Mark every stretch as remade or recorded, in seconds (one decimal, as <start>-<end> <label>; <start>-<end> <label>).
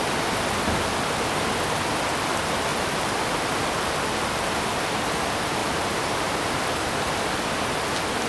0.0-2.7 recorded; 2.7-3.7 remade; 3.7-5.6 recorded; 5.6-6.4 remade; 6.4-8.3 recorded